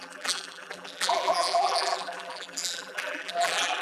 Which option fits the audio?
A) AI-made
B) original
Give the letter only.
A